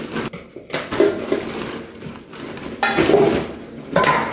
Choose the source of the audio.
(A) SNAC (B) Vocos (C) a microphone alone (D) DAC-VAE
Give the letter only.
C